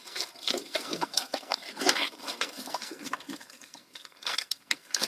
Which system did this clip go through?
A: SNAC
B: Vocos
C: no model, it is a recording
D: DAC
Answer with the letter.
A